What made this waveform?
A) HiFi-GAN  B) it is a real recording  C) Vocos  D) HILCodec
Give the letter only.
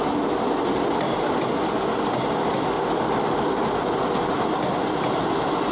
B